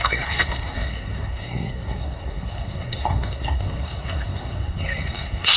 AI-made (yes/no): yes